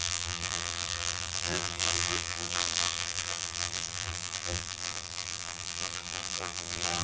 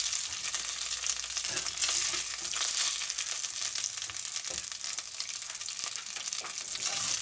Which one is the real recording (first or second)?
second